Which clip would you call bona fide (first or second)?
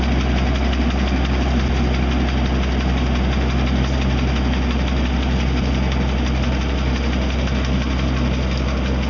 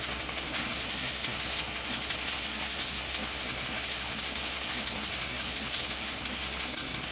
first